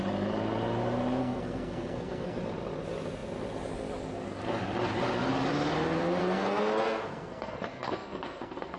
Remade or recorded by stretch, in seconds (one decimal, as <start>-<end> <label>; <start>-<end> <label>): 0.0-1.2 recorded; 1.2-2.4 remade; 2.4-6.2 recorded; 6.2-8.8 remade